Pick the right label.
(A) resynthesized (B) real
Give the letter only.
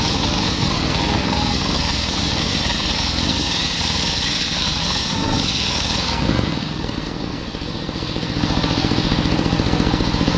A